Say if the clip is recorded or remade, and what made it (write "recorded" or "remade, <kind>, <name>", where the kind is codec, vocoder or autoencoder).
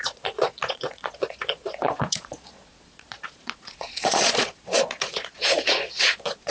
remade, vocoder, Vocos